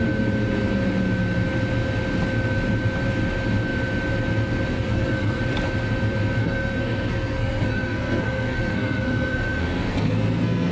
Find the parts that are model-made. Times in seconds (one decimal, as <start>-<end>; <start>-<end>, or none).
4.7-5.4; 6.4-10.7